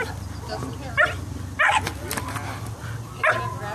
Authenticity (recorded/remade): recorded